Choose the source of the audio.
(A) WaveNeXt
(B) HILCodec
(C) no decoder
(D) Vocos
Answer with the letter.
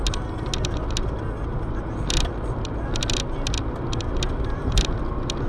C